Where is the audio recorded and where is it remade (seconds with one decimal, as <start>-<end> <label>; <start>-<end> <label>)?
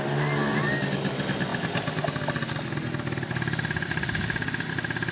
0.0-5.1 recorded